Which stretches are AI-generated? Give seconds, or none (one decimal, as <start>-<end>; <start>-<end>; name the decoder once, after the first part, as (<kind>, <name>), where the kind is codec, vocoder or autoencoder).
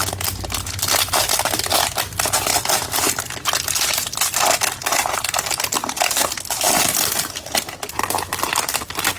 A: none